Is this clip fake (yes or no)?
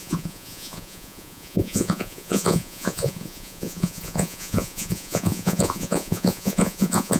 yes